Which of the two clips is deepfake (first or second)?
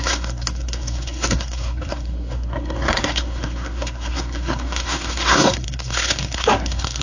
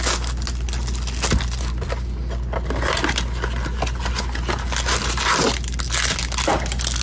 first